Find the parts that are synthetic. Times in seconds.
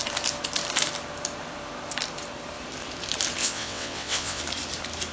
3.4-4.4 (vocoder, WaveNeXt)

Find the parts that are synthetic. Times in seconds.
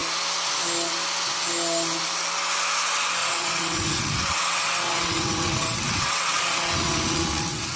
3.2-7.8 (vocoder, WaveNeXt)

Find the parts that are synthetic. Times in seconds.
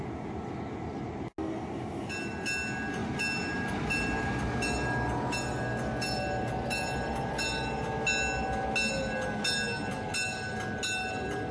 none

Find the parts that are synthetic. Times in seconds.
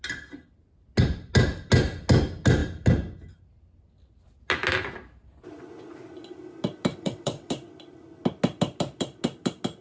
6.9-7.5 (vocoder, WaveNeXt)